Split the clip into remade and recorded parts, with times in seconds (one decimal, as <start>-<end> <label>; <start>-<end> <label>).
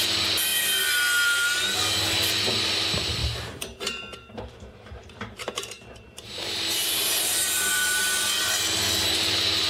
0.0-3.2 recorded; 3.2-8.0 remade; 8.0-9.7 recorded